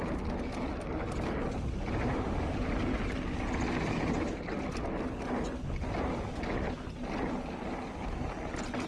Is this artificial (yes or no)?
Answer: no